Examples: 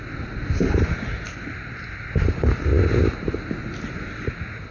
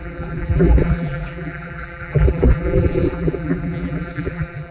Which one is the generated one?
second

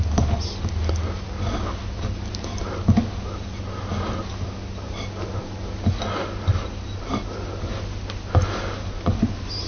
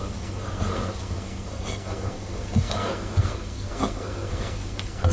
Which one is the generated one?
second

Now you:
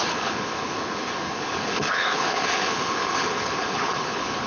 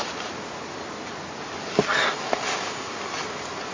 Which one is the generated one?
first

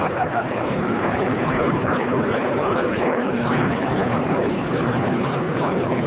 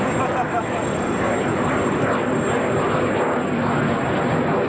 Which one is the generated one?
first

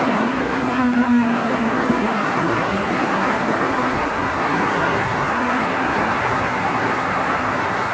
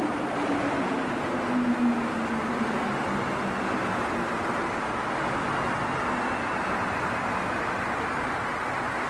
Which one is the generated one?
first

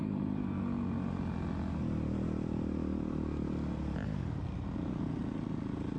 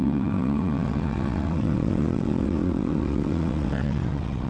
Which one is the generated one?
second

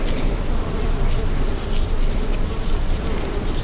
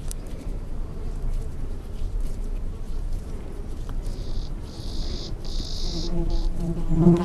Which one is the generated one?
second